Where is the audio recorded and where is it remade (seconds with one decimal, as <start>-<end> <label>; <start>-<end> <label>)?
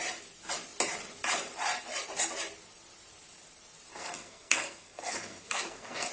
0.0-3.9 recorded; 3.9-6.1 remade